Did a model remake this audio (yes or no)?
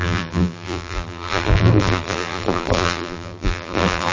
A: yes